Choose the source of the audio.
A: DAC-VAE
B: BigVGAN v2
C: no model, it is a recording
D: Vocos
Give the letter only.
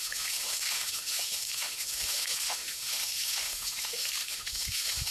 A